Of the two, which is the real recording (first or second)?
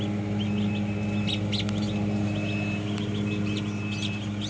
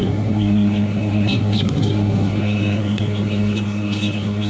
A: first